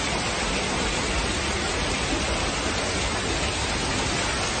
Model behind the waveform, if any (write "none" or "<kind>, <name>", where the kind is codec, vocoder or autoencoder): none